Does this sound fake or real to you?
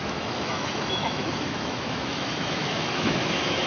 fake